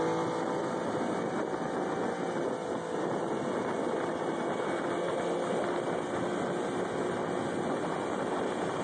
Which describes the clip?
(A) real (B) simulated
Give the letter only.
A